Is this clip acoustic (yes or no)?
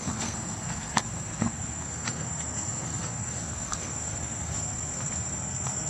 no